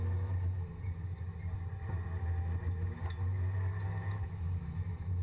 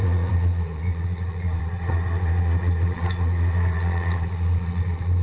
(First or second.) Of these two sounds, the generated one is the second